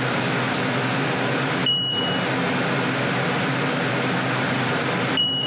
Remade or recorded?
recorded